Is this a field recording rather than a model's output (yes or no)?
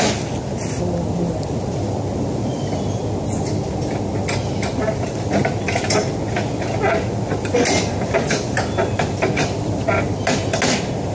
yes